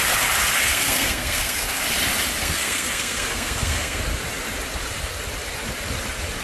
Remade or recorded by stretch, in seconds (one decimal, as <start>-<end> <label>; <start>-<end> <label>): 0.0-0.7 recorded; 0.7-1.8 remade; 1.8-2.4 recorded; 2.4-4.0 remade; 4.0-6.4 recorded